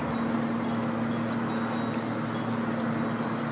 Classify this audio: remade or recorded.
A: recorded